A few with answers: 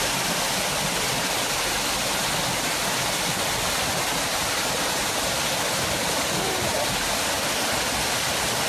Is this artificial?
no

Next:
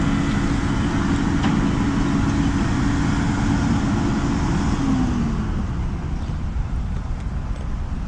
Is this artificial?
no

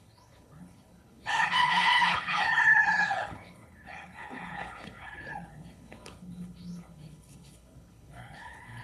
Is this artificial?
yes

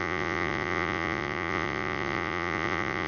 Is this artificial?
yes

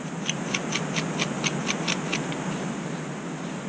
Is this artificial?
no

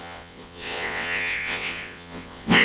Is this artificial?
yes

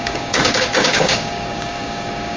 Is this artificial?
yes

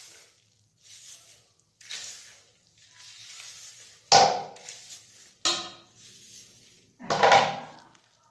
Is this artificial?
no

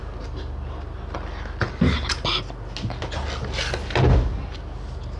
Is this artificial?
no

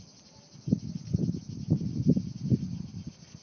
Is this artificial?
no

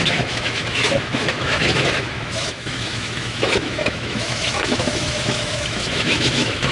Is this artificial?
yes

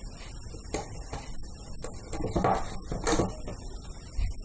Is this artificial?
no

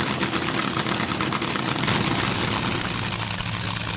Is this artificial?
no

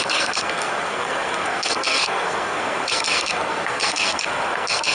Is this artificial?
yes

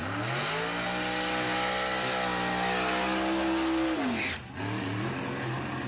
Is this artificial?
no